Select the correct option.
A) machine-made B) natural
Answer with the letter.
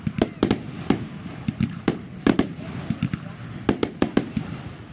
A